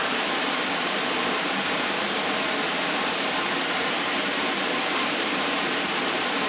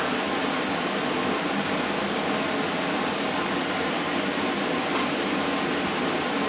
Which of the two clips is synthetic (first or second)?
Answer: first